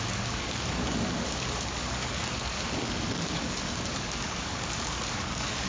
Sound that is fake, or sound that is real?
fake